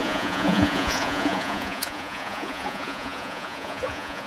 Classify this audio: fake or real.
fake